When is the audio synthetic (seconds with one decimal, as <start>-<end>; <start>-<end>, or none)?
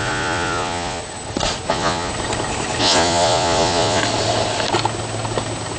0.0-1.0; 1.7-2.1; 2.8-4.0